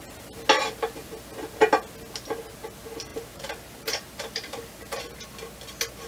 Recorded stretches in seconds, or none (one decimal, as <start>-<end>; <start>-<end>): 0.0-3.1; 5.0-6.1